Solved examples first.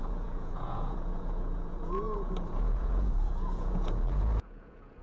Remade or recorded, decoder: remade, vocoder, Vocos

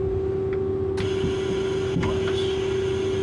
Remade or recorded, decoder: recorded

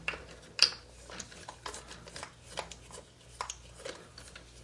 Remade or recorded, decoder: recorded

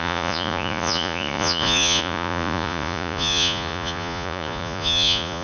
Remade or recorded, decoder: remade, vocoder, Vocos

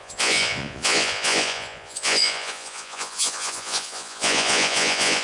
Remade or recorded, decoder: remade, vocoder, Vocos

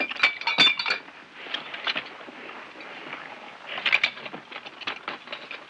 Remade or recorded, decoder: recorded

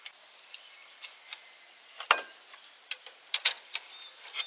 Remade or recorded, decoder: recorded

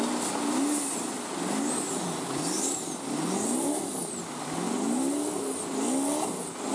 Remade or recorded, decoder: recorded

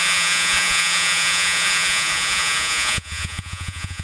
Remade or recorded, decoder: remade, vocoder, Vocos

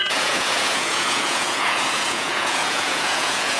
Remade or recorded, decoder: remade, vocoder, Vocos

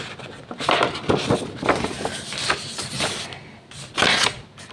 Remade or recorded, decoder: recorded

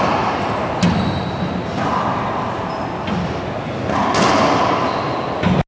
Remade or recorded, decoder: recorded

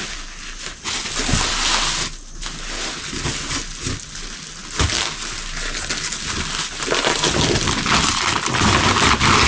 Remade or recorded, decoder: recorded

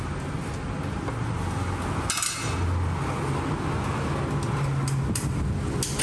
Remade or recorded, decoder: recorded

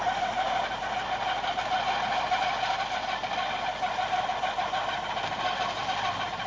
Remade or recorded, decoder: recorded